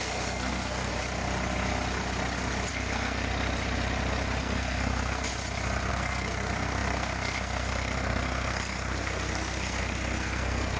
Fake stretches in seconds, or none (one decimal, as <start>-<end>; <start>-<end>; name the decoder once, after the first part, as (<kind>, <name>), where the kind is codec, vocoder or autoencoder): 0.0-0.9 (codec, SNAC); 2.7-3.3; 4.4-5.3; 5.9-10.8